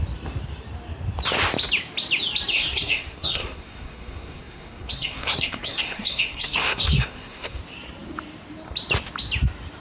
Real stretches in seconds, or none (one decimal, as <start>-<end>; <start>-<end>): 0.0-2.5; 7.6-9.8